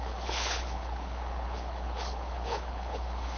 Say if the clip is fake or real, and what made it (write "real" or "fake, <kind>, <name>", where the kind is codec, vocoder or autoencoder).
fake, codec, HILCodec